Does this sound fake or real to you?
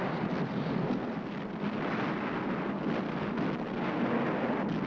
real